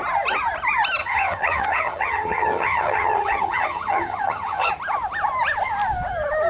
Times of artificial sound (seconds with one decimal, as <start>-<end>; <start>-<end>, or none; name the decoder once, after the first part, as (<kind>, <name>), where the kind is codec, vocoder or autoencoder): 1.0-4.7 (vocoder, HiFi-GAN)